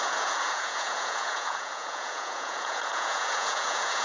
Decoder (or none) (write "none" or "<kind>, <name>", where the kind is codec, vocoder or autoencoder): vocoder, Vocos